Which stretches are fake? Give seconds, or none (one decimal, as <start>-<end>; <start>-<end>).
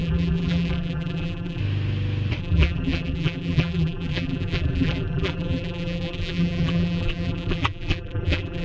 0.0-1.6; 2.4-8.6